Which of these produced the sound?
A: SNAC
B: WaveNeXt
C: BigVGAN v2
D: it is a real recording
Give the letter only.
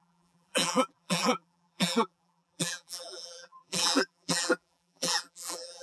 C